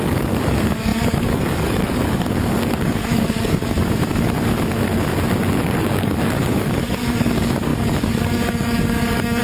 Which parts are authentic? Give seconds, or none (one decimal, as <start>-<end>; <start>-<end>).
3.6-5.5